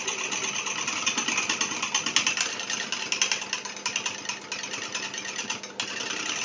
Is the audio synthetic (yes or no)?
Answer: no